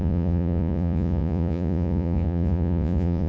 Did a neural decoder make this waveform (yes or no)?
yes